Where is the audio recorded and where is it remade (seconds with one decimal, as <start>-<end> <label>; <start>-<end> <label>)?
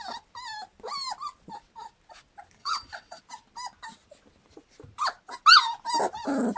0.0-2.6 recorded; 2.6-3.2 remade; 3.2-6.6 recorded